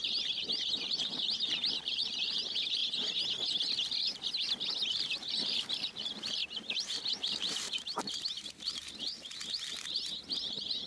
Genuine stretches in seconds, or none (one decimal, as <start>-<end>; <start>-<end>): 2.8-4.9